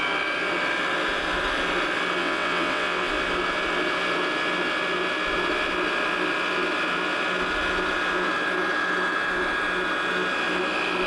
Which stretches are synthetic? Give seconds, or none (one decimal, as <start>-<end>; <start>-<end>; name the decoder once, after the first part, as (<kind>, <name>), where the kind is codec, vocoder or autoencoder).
2.2-3.1 (vocoder, WaveNeXt)